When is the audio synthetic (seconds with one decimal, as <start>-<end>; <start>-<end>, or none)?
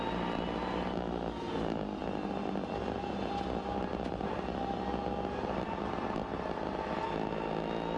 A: none